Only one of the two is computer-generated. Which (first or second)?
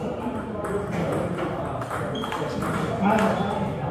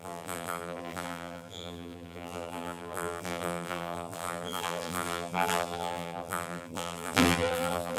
second